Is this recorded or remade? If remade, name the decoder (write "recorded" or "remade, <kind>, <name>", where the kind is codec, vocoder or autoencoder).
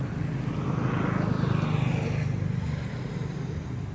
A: recorded